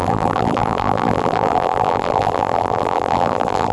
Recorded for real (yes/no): no